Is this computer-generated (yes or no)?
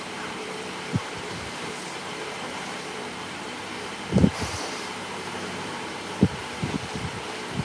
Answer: yes